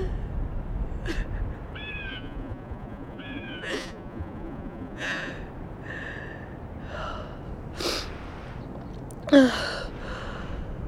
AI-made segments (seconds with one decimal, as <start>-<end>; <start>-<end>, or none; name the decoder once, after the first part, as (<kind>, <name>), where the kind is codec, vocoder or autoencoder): 2.1-5.3 (vocoder, Vocos)